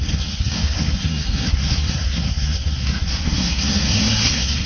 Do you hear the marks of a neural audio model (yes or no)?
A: yes